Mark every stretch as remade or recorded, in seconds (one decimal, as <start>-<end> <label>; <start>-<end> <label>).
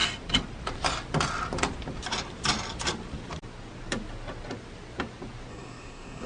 0.0-5.5 recorded; 5.5-6.3 remade